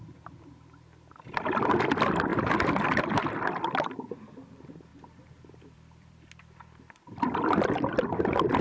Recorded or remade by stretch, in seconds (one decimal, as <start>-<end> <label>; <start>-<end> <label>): 0.0-2.3 recorded; 2.3-4.2 remade; 4.2-4.9 recorded; 4.9-7.7 remade; 7.7-8.6 recorded